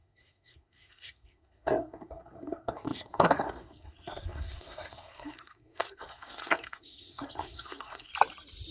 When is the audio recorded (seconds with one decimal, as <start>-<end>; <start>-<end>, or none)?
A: 8.1-8.7